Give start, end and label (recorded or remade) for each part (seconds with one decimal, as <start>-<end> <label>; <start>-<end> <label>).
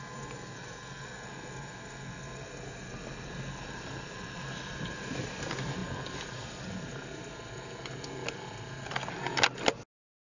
0.0-10.3 recorded